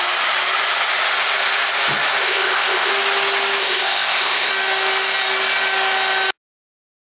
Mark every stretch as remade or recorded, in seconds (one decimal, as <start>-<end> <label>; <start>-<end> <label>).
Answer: 0.0-2.2 recorded; 2.2-2.9 remade; 2.9-3.6 recorded; 3.6-4.5 remade; 4.5-7.1 recorded